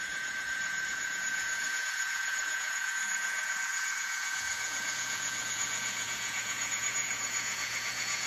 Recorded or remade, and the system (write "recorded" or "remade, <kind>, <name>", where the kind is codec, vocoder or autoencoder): remade, vocoder, Vocos